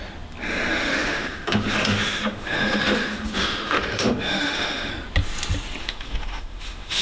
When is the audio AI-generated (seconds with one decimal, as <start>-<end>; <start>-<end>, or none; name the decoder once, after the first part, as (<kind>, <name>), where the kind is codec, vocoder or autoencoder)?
0.8-4.9 (autoencoder, DAC-VAE); 5.8-7.0